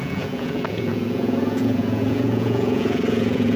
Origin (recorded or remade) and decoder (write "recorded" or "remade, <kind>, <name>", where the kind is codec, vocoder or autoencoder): remade, vocoder, Vocos